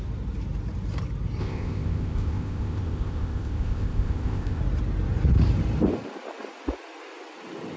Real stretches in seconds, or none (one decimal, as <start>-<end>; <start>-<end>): 0.0-1.4; 4.6-7.8